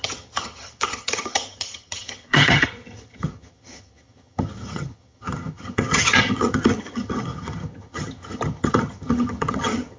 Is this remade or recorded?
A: remade